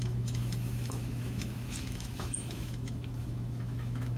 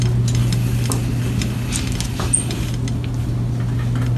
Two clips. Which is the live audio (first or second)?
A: second